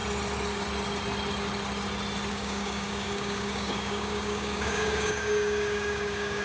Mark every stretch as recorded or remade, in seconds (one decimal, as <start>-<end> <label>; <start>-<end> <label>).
0.0-2.3 recorded; 2.3-6.4 remade